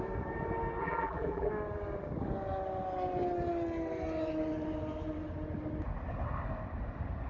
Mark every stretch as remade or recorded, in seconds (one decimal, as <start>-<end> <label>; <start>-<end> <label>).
0.0-0.8 recorded; 0.8-1.5 remade; 1.5-7.3 recorded